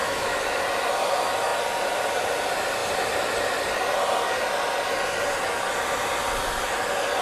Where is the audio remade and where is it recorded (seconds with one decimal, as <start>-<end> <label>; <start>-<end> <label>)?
0.0-0.6 remade; 0.6-7.2 recorded